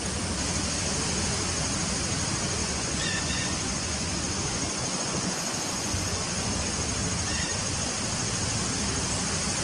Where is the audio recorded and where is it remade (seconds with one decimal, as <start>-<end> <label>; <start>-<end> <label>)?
0.0-2.6 recorded; 2.6-6.6 remade; 6.6-7.5 recorded; 7.5-8.0 remade; 8.0-9.6 recorded